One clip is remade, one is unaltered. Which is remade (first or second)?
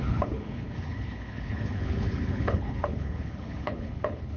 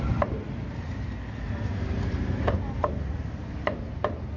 first